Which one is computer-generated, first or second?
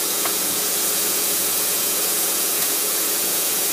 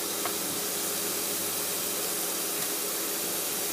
first